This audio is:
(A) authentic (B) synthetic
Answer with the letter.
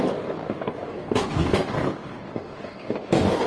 B